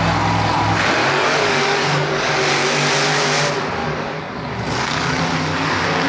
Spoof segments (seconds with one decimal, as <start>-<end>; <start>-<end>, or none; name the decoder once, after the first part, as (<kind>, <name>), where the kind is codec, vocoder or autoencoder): 1.0-2.3 (codec, DAC); 3.8-5.2